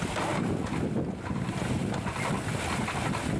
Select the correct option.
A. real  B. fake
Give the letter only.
A